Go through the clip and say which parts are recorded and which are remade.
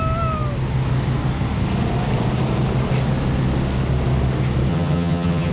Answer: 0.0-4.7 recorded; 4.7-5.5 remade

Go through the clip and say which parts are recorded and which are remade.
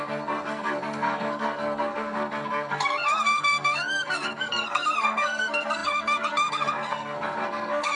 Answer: 0.0-7.9 remade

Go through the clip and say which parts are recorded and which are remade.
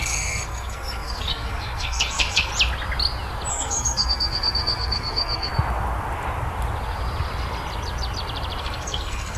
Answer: 0.0-2.5 remade; 2.5-3.5 recorded; 3.5-5.5 remade; 5.5-8.6 recorded; 8.6-9.4 remade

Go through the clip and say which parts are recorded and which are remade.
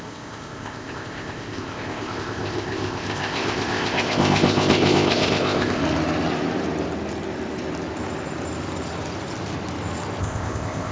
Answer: 0.0-5.8 remade; 5.8-10.2 recorded; 10.2-10.9 remade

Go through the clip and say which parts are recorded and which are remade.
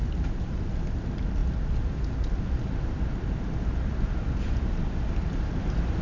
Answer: 0.0-6.0 recorded